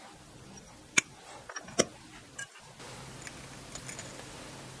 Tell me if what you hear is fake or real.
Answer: real